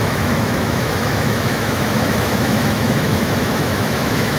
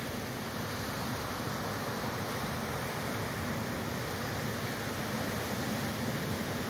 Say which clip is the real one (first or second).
second